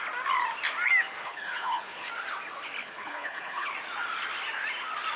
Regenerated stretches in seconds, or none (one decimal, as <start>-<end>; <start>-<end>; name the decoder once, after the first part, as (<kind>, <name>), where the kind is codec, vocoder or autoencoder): 1.2-2.1 (codec, HILCodec); 2.8-3.7